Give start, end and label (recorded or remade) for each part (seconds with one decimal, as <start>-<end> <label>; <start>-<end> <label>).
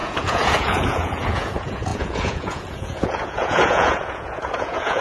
0.0-5.0 remade